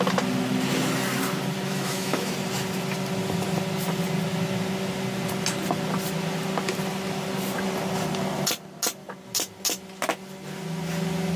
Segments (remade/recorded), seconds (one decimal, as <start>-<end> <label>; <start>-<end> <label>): 0.0-1.7 recorded; 1.7-2.3 remade; 2.3-11.4 recorded